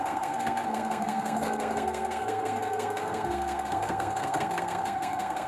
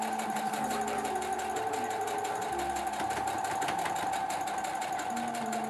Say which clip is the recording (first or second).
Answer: second